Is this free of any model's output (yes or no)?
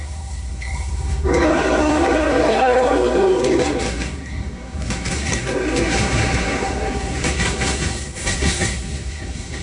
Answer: no